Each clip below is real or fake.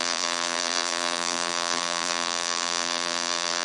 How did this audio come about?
fake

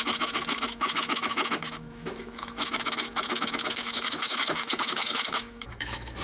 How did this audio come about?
fake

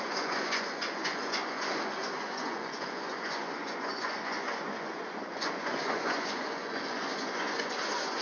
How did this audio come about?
fake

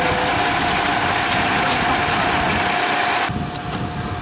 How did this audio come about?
real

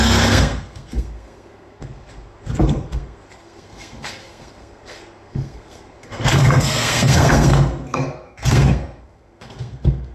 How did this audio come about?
fake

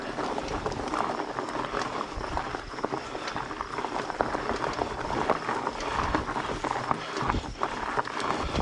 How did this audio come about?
real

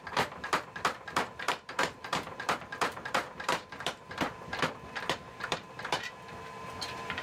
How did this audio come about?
fake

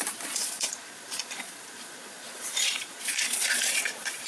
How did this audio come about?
fake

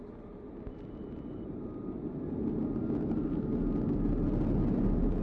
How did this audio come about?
real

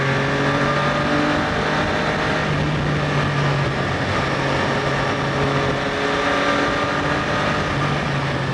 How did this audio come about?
real